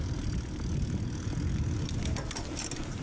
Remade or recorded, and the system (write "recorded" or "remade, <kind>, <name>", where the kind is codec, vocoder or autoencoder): recorded